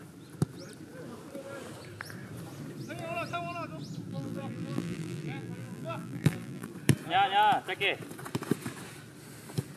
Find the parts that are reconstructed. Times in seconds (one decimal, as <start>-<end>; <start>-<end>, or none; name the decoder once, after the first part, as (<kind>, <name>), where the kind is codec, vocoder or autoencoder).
4.1-6.7 (vocoder, BigVGAN v2)